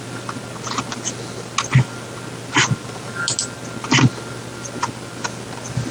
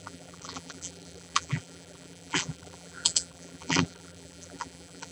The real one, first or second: first